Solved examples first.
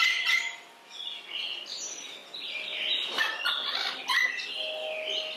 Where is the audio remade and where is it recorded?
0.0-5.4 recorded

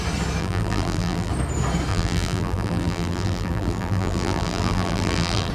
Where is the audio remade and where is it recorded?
0.0-0.4 recorded; 0.4-1.3 remade; 1.3-1.9 recorded; 1.9-5.5 remade

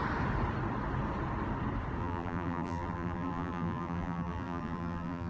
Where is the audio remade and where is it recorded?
0.0-2.0 recorded; 2.0-5.3 remade